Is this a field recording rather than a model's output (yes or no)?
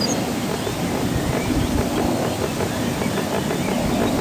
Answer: yes